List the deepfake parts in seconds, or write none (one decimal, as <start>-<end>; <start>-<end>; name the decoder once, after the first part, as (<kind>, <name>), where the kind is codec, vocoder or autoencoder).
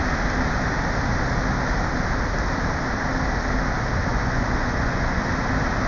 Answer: 4.1-5.2 (vocoder, Vocos)